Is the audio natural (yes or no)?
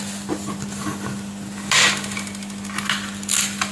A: yes